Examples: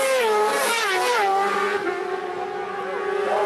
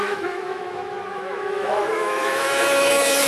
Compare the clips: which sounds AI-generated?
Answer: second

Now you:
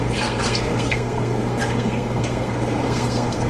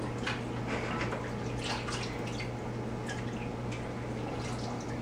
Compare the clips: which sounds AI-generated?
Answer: first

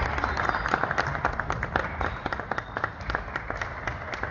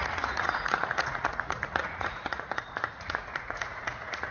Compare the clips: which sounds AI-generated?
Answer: second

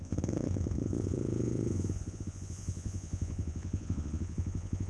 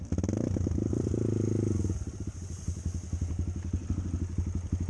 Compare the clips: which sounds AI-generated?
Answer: first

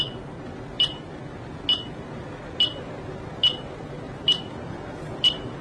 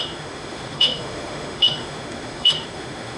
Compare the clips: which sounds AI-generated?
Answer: second